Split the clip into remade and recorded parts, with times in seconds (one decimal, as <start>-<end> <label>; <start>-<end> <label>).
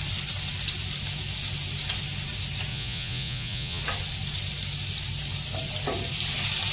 0.0-2.7 recorded; 2.7-3.8 remade; 3.8-6.7 recorded